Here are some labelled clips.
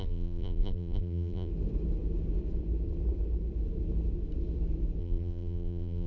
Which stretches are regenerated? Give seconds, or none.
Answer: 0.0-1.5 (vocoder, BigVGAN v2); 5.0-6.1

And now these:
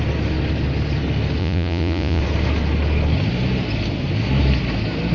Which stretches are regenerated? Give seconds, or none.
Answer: 1.4-2.2 (vocoder, Vocos)

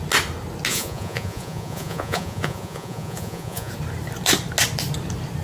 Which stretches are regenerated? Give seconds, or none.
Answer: 0.7-3.7 (vocoder, Vocos)

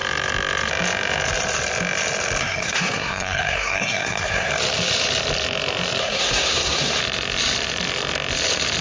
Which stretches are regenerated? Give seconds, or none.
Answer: 2.4-4.5 (codec, SNAC); 6.0-7.0

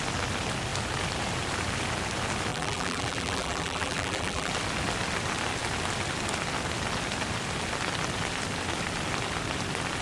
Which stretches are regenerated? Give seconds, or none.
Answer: 2.5-4.5 (vocoder, BigVGAN v2)

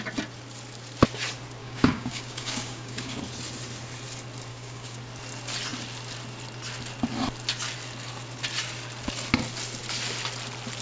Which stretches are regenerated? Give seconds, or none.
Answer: 1.6-3.2 (codec, DAC); 4.5-5.0

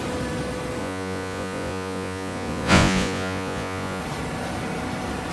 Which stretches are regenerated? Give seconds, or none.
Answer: 0.8-4.0 (vocoder, Vocos)

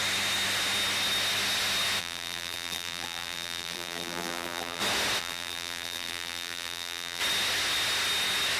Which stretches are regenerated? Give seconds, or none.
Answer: 2.0-4.8 (vocoder, BigVGAN v2); 5.2-7.2